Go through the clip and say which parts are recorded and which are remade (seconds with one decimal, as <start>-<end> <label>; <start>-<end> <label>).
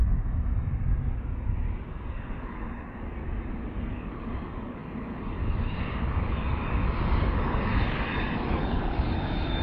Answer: 0.0-2.1 recorded; 2.1-3.2 remade; 3.2-3.8 recorded; 3.8-9.6 remade